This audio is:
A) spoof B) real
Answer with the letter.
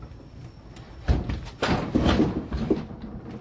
B